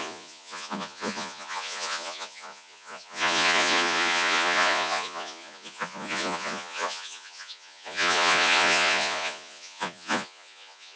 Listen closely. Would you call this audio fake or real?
fake